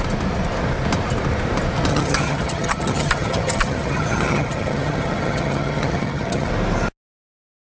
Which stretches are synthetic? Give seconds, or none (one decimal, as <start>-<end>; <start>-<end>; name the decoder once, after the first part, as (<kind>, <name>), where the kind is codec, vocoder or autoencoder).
1.9-6.5 (vocoder, HiFi-GAN)